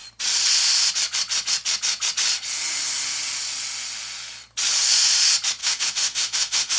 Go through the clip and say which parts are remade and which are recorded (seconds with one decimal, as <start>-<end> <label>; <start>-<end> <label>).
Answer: 0.0-5.6 recorded; 5.6-6.8 remade